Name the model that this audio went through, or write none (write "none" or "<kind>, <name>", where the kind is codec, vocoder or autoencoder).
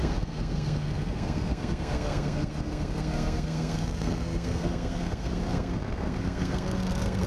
codec, SNAC